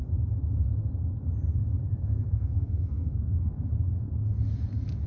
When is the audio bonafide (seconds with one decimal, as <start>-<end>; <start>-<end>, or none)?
0.0-2.0; 3.7-5.1